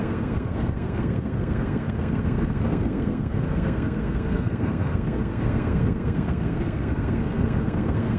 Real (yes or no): no